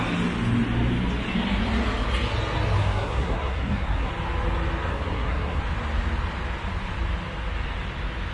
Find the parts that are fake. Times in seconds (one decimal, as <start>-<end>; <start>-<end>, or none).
2.8-4.1; 4.9-5.6